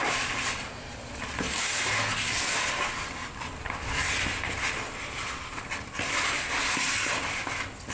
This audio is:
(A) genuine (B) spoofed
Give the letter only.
A